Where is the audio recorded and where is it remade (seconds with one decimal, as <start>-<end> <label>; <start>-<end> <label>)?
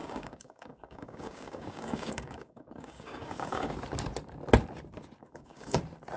0.0-3.7 remade; 3.7-5.2 recorded; 5.2-5.8 remade; 5.8-6.2 recorded